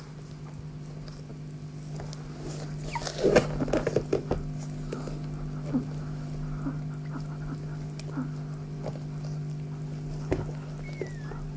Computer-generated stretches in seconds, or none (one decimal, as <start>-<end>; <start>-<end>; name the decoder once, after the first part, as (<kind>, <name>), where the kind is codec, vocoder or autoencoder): none